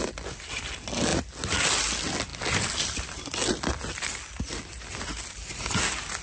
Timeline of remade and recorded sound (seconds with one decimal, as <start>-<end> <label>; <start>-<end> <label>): 0.0-6.2 recorded